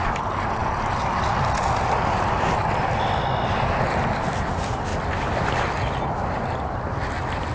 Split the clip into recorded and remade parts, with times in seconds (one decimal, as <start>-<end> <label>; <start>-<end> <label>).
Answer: 0.0-4.9 recorded; 4.9-5.6 remade; 5.6-7.5 recorded